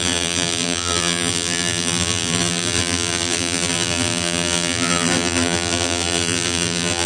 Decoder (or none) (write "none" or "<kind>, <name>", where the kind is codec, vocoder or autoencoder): vocoder, BigVGAN v2